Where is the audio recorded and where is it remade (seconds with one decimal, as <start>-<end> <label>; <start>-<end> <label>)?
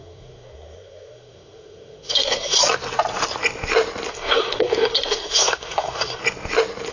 0.0-2.6 remade; 2.6-4.1 recorded; 4.1-6.2 remade; 6.2-6.9 recorded